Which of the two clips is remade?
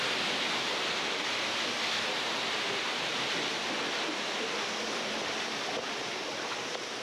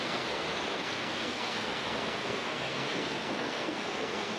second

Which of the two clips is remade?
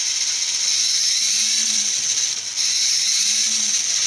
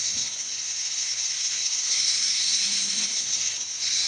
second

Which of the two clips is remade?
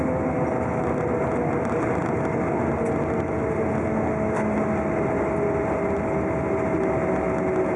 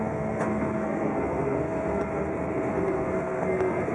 second